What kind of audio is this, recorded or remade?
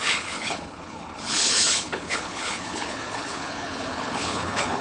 remade